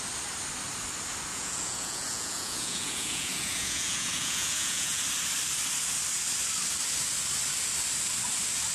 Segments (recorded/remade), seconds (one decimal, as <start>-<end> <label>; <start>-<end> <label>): 0.0-1.3 recorded; 1.3-5.0 remade; 5.0-8.7 recorded

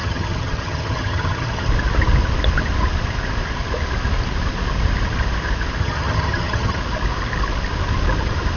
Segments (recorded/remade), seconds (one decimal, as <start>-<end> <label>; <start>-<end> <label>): 0.0-1.7 remade; 1.7-5.8 recorded; 5.8-6.8 remade; 6.8-8.6 recorded

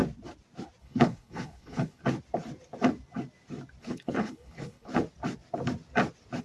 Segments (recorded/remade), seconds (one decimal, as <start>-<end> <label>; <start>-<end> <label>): 0.0-0.8 recorded; 0.8-2.0 remade; 2.0-3.8 recorded; 3.8-4.9 remade; 4.9-6.4 recorded

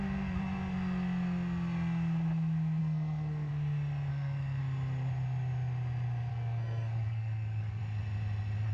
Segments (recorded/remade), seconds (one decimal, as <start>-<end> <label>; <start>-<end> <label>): 0.0-2.8 recorded; 2.8-3.5 remade; 3.5-4.1 recorded; 4.1-4.6 remade; 4.6-6.3 recorded; 6.3-7.8 remade; 7.8-8.7 recorded